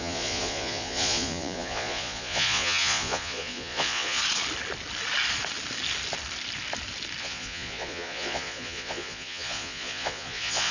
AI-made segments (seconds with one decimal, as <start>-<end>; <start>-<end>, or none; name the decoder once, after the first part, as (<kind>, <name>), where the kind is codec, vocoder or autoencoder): 0.0-4.2 (vocoder, Vocos); 7.2-10.7